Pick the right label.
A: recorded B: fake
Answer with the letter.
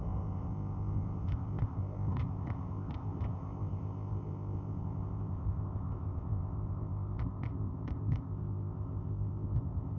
B